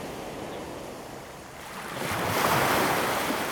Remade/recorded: recorded